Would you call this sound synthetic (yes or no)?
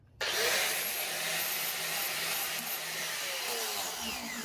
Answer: no